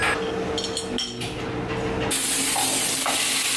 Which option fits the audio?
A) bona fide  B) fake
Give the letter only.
A